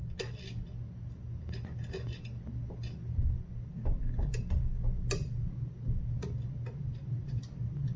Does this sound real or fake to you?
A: real